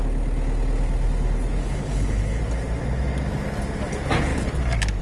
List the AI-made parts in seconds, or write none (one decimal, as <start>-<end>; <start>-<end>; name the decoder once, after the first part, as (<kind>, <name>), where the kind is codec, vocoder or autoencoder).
1.6-2.4 (codec, HILCodec)